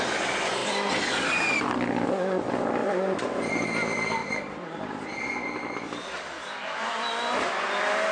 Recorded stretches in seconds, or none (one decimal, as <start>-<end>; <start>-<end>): 0.0-2.8; 3.5-4.2; 5.2-8.1